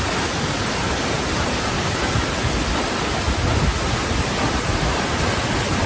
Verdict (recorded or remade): recorded